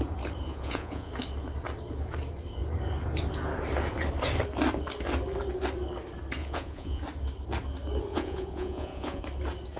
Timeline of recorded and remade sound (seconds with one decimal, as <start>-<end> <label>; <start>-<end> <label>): 0.0-0.5 recorded; 0.5-1.1 remade; 1.1-6.4 recorded; 6.4-7.0 remade; 7.0-8.1 recorded; 8.1-9.2 remade; 9.2-9.8 recorded

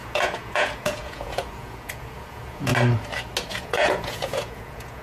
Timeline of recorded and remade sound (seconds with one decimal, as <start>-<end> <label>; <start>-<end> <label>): 0.0-2.7 remade; 2.7-3.5 recorded; 3.5-5.0 remade

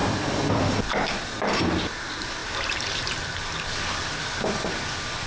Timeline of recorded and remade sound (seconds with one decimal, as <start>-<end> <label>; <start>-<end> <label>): 0.0-2.4 recorded; 2.4-3.7 remade; 3.7-5.3 recorded

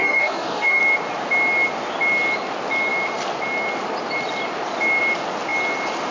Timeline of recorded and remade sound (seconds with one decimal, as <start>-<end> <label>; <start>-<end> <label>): 0.0-0.8 remade; 0.8-6.1 recorded

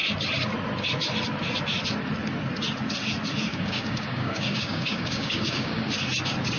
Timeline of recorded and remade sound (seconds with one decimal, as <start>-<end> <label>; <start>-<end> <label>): 0.0-3.5 recorded; 3.5-5.8 remade; 5.8-6.6 recorded

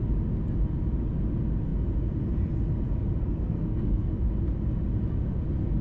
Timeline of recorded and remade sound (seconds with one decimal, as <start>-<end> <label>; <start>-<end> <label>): 0.0-3.2 recorded; 3.2-4.1 remade; 4.1-5.8 recorded

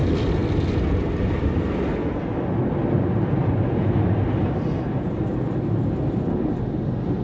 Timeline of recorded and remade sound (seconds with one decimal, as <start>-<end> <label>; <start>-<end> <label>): 0.0-7.2 recorded

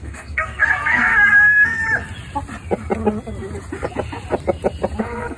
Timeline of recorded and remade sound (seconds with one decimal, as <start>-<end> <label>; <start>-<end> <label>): 0.0-1.8 remade; 1.8-5.0 recorded; 5.0-5.4 remade